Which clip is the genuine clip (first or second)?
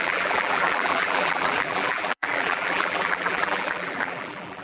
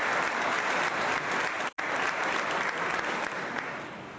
second